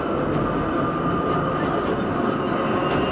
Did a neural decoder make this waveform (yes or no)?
no